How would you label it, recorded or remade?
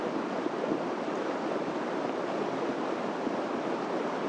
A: recorded